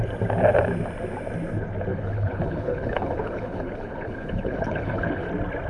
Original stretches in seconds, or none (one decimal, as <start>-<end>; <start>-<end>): 0.0-1.9; 5.3-5.7